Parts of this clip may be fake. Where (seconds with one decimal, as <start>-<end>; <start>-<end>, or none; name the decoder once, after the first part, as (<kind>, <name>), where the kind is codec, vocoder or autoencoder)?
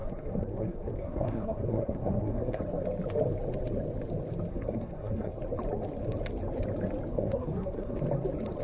0.0-2.6 (codec, SNAC); 4.5-5.3; 7.1-8.0